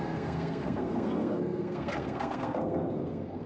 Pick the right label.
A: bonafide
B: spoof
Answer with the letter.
B